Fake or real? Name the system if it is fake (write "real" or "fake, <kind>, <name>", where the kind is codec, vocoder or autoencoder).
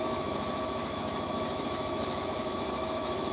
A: fake, autoencoder, DAC-VAE